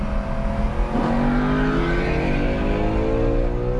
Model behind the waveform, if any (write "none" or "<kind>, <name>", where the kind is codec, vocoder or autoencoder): none